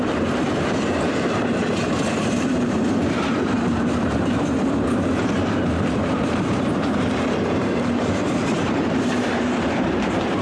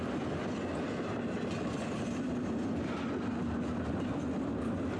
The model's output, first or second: first